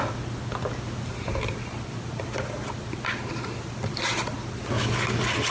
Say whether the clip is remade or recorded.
recorded